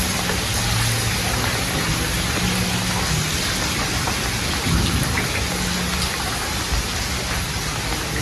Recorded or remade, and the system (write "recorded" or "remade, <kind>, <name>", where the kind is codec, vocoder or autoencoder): recorded